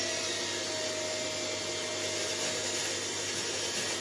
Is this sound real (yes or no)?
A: yes